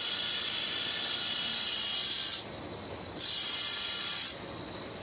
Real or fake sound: real